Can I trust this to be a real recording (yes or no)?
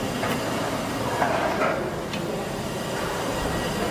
yes